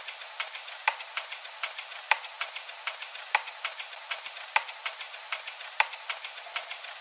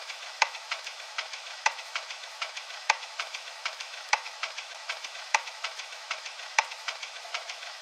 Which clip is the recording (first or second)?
first